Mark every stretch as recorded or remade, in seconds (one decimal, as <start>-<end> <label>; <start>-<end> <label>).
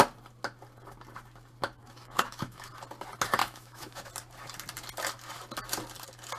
0.0-1.8 recorded; 1.8-2.7 remade; 2.7-3.4 recorded; 3.4-4.1 remade; 4.1-6.4 recorded